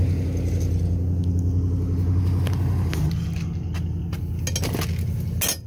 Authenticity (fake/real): real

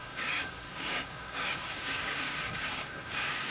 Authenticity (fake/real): fake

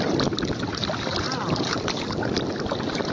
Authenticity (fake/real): real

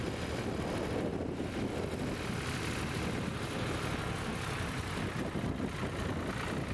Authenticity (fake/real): real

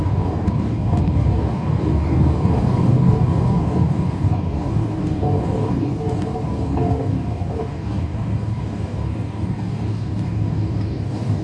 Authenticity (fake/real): fake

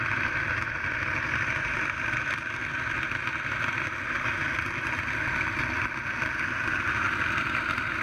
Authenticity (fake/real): real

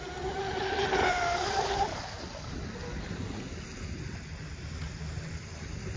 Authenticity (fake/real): real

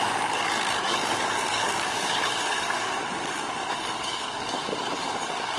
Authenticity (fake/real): fake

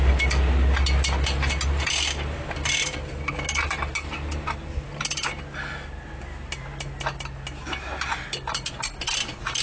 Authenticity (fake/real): real